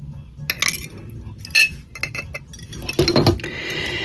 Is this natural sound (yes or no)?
yes